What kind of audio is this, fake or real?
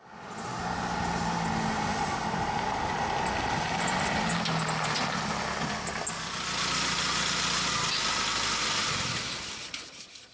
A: real